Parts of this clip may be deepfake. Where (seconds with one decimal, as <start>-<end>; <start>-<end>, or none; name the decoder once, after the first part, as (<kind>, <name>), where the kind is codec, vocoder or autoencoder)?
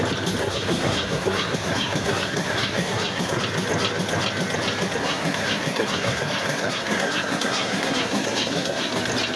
0.4-3.4 (codec, SNAC); 5.0-8.9